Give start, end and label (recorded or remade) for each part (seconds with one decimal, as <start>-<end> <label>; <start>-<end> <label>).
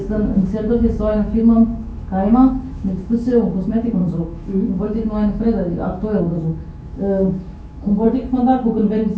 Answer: 0.0-8.2 remade; 8.2-9.2 recorded